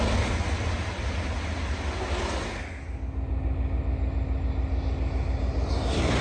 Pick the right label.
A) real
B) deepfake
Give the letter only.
A